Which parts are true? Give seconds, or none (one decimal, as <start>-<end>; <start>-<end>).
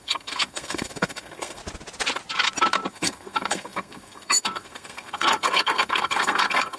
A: 1.6-2.9